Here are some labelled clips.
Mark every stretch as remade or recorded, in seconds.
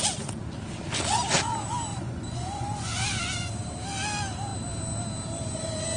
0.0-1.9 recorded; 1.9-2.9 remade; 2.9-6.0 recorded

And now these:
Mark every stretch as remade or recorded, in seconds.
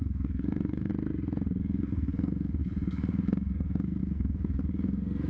0.0-0.9 remade; 0.9-1.6 recorded; 1.6-5.3 remade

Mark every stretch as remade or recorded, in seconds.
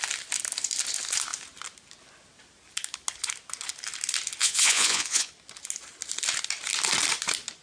0.0-4.4 recorded; 4.4-5.3 remade; 5.3-7.6 recorded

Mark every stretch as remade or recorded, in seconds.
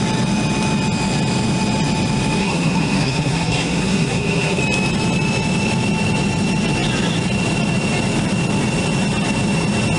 0.0-2.4 recorded; 2.4-4.6 remade; 4.6-10.0 recorded